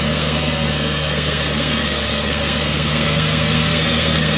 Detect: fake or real fake